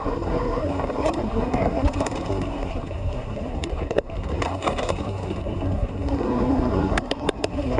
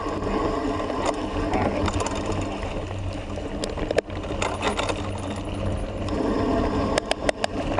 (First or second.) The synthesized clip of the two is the first